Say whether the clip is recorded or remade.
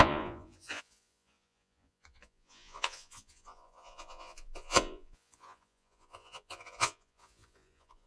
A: remade